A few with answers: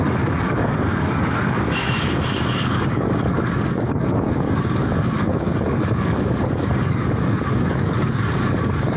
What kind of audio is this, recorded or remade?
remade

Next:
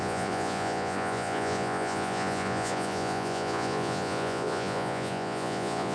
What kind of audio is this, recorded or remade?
remade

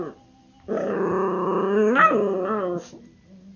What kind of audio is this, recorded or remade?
recorded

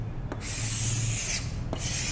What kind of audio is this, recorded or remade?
recorded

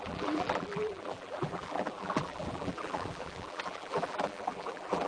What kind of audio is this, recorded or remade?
remade